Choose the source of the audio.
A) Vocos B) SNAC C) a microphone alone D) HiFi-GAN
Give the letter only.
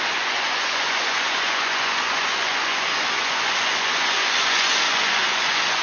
A